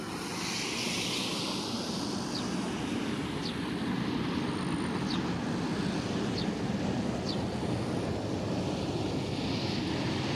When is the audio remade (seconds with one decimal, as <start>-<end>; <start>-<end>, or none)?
none